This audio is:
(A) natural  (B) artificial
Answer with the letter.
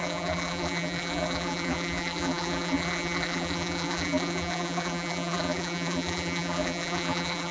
B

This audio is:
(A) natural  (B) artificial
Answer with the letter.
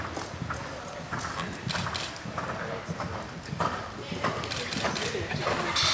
A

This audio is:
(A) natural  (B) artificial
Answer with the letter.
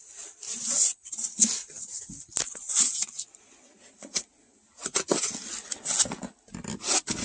A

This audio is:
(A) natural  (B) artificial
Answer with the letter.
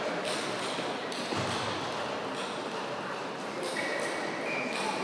A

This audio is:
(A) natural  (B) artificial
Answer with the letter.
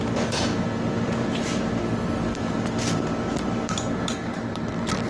A